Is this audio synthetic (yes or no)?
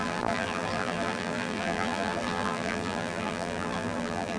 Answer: yes